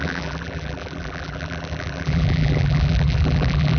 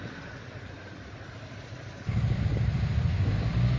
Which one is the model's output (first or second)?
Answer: first